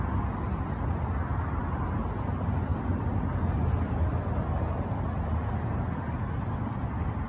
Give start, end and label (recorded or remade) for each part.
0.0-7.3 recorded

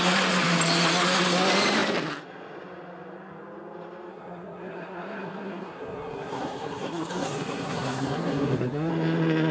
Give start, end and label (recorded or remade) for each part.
0.0-4.1 recorded; 4.1-8.9 remade; 8.9-9.5 recorded

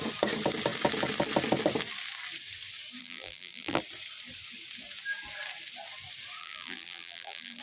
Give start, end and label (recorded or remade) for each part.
0.0-3.0 recorded; 3.0-3.8 remade; 3.8-6.4 recorded; 6.4-7.6 remade

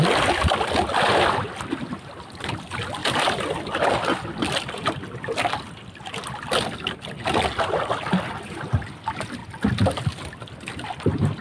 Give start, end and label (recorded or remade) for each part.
0.0-11.4 recorded

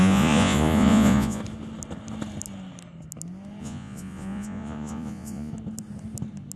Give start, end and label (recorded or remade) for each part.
0.0-1.4 remade; 1.4-3.6 recorded; 3.6-5.5 remade; 5.5-6.6 recorded

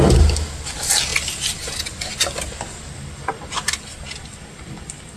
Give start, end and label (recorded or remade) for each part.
0.0-5.2 recorded

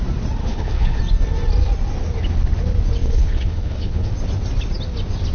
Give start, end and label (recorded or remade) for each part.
0.0-0.4 recorded; 0.4-1.0 remade; 1.0-3.0 recorded; 3.0-4.1 remade; 4.1-5.3 recorded

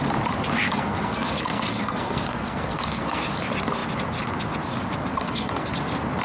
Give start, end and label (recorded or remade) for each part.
0.0-0.6 recorded; 0.6-3.3 remade; 3.3-5.1 recorded; 5.1-5.7 remade; 5.7-6.2 recorded